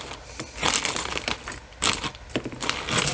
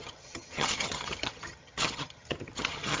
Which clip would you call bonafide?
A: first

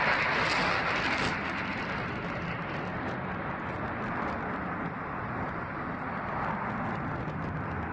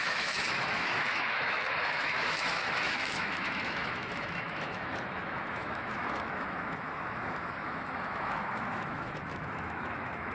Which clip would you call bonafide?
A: first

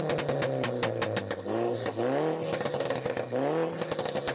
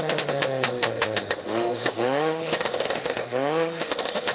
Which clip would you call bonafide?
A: first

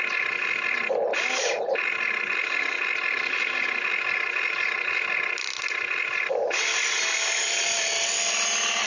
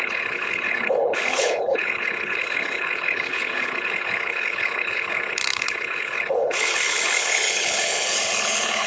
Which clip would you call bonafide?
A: first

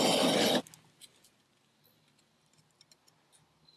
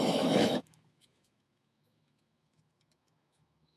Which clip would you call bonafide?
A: first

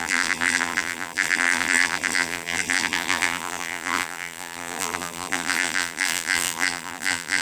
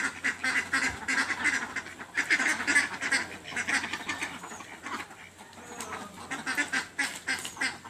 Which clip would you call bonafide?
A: second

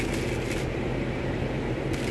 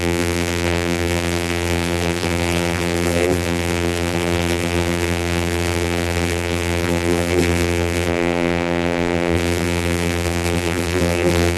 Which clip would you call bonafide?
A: first